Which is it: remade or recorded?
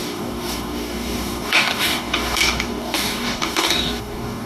remade